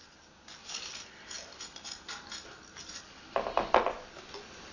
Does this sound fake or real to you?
real